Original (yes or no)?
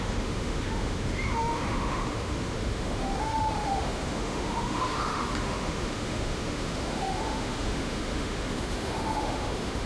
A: no